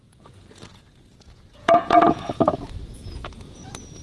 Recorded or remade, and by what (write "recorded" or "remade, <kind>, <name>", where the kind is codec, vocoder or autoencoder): remade, vocoder, Vocos